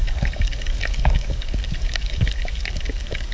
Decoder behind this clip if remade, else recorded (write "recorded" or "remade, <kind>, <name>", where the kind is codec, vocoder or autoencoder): remade, codec, DAC